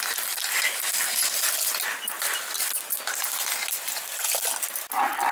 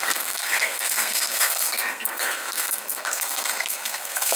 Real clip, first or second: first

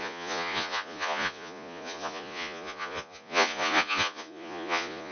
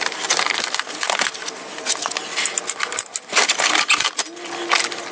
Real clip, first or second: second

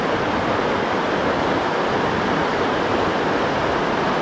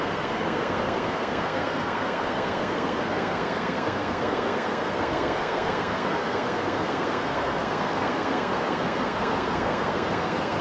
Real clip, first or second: first